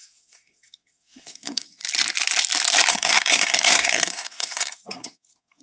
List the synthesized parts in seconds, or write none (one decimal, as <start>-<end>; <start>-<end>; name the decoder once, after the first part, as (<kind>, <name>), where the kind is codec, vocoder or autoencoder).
0.0-1.8 (codec, SNAC); 2.9-5.6